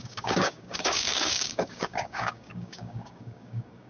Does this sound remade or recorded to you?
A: remade